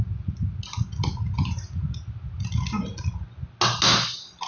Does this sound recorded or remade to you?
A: recorded